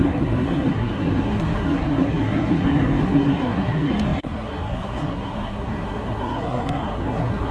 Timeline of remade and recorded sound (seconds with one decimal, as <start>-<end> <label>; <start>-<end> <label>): 0.0-7.5 remade